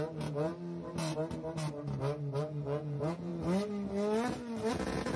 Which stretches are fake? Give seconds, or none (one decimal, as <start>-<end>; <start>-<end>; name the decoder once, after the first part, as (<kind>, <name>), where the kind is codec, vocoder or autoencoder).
0.0-0.5 (vocoder, Vocos); 2.4-3.3; 4.7-5.2